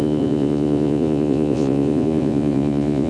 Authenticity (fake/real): fake